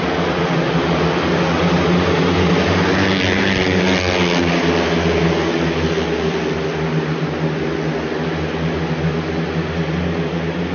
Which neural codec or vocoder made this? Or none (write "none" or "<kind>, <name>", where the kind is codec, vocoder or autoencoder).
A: none